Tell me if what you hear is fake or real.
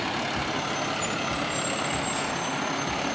real